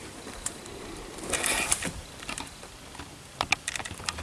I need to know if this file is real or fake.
fake